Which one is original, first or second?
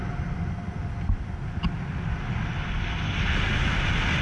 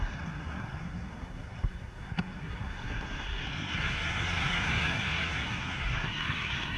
first